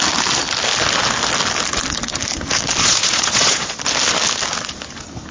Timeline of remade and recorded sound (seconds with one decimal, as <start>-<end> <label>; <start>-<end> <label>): 0.0-2.8 recorded; 2.8-3.8 remade; 3.8-5.3 recorded